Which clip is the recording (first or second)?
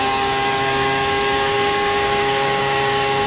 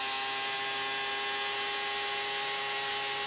second